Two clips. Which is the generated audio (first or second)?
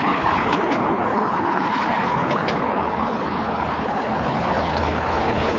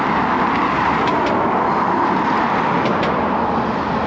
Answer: first